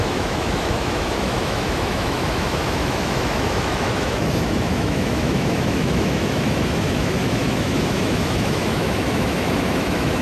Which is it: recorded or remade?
remade